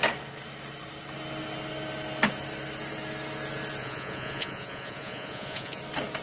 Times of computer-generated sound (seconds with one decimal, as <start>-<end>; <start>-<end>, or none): 3.8-5.8